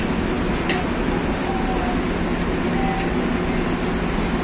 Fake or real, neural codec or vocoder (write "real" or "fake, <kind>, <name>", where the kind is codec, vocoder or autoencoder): real